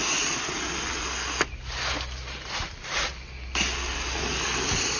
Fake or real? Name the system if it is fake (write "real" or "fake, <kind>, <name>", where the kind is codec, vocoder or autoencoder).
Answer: real